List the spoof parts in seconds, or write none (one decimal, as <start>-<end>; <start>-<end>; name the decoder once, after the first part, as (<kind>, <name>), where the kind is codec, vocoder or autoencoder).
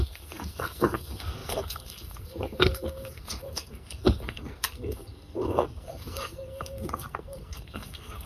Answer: 0.0-8.3 (codec, SNAC)